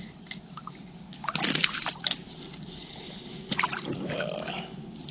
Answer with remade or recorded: recorded